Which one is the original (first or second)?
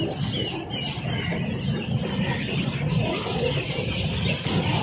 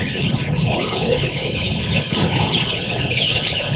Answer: first